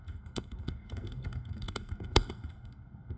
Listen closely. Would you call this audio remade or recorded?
remade